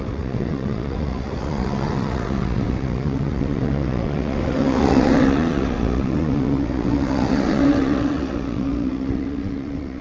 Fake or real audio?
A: fake